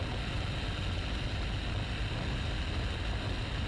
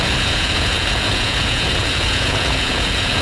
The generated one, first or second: second